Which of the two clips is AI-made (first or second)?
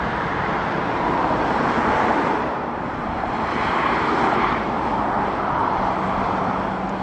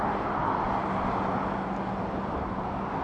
first